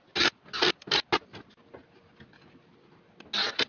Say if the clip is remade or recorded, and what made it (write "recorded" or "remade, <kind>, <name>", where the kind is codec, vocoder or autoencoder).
recorded